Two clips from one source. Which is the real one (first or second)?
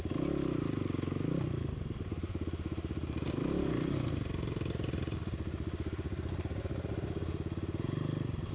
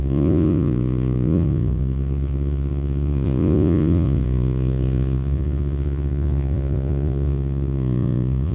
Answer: first